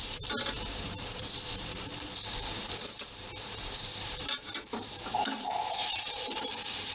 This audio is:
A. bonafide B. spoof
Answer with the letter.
B